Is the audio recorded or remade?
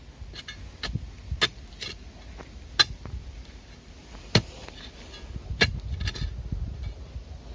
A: recorded